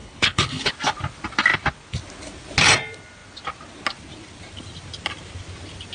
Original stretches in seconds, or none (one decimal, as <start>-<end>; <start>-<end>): 0.7-5.9